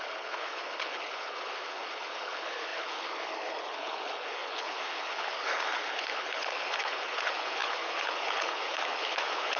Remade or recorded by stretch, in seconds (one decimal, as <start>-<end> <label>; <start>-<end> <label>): 0.0-9.6 remade